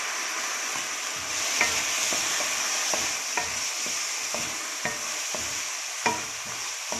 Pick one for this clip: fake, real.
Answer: real